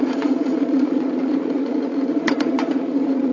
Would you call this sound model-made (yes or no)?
yes